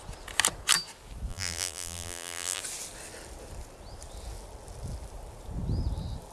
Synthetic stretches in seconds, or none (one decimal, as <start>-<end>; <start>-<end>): 1.3-2.6